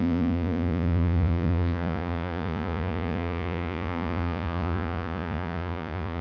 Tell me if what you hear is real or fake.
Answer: fake